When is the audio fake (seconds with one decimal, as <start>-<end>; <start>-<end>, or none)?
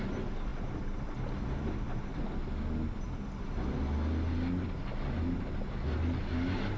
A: none